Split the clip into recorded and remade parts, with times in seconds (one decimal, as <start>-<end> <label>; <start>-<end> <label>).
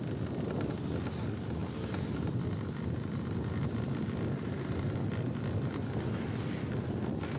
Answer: 0.0-7.4 recorded